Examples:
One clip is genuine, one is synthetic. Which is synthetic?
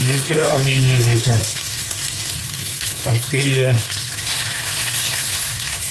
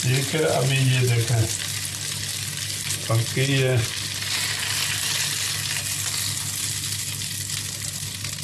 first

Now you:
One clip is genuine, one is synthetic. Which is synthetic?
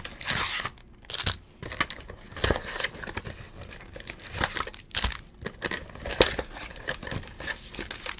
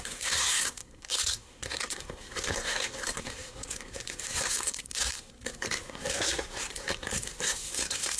second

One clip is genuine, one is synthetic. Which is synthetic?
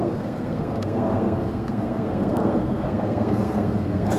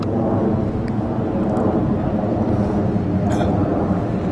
first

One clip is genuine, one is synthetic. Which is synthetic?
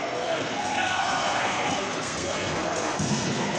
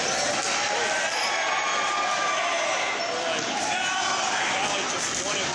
first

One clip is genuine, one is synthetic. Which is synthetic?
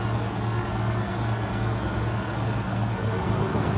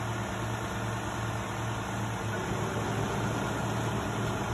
first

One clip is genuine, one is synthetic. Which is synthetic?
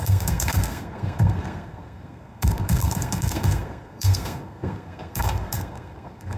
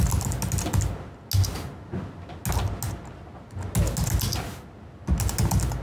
first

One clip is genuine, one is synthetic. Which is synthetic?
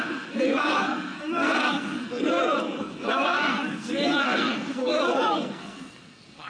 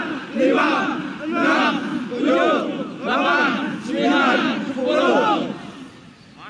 first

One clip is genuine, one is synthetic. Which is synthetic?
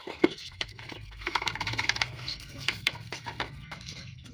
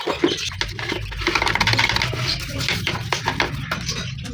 first